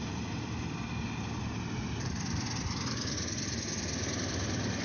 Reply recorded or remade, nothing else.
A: remade